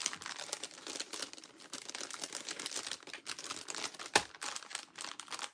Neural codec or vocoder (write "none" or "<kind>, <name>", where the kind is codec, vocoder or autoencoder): none